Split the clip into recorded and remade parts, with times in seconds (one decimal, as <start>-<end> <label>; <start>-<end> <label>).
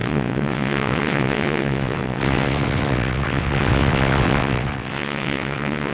0.0-5.9 remade